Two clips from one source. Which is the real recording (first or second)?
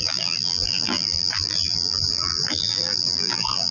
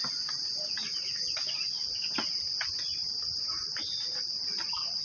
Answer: second